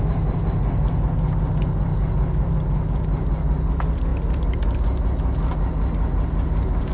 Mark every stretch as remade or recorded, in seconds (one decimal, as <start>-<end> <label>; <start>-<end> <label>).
0.0-6.9 recorded